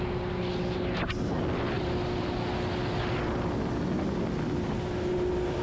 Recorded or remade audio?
recorded